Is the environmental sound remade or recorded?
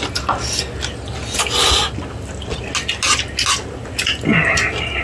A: recorded